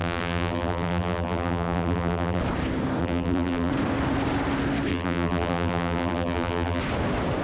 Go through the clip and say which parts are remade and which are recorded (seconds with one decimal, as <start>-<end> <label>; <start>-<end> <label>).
0.0-2.4 remade; 2.4-3.0 recorded; 3.0-3.7 remade; 3.7-4.9 recorded; 4.9-6.8 remade; 6.8-7.4 recorded

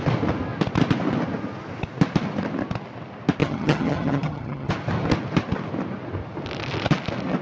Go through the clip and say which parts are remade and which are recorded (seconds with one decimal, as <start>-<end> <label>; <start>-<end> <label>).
0.0-3.4 recorded; 3.4-4.7 remade; 4.7-7.4 recorded

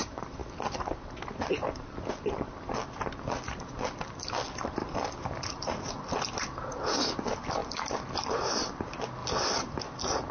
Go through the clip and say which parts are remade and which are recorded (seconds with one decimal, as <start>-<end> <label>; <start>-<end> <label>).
0.0-4.8 recorded; 4.8-5.7 remade; 5.7-7.6 recorded; 7.6-8.6 remade; 8.6-9.2 recorded; 9.2-9.8 remade; 9.8-10.3 recorded

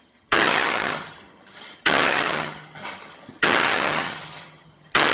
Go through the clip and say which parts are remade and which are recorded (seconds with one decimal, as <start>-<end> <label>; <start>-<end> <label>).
0.0-5.1 remade

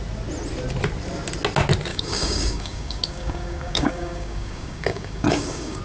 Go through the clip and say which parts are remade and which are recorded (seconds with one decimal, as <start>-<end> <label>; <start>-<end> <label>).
0.0-1.9 recorded; 1.9-5.8 remade